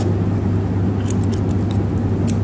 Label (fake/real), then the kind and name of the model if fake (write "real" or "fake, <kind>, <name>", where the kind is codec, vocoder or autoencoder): real